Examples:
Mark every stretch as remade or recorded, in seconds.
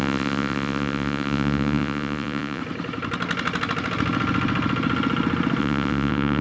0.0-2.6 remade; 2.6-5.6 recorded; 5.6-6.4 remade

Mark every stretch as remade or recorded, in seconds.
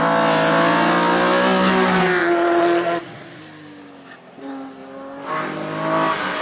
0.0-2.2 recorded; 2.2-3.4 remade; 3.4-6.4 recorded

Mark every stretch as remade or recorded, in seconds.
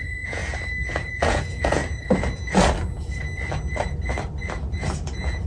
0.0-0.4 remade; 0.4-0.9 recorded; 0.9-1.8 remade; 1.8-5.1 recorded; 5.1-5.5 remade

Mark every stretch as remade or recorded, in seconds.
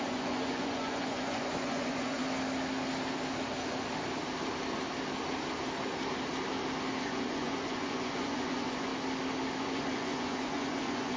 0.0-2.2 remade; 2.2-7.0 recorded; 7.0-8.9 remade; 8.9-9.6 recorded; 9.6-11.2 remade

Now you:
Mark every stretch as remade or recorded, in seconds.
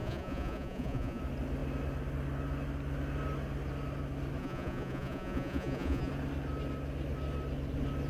0.0-1.2 remade; 1.2-4.4 recorded; 4.4-6.1 remade; 6.1-8.1 recorded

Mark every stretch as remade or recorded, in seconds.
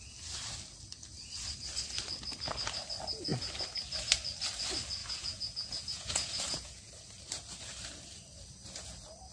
0.0-5.0 recorded; 5.0-6.9 remade; 6.9-9.3 recorded